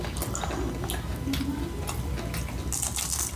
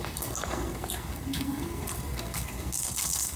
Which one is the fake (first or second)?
second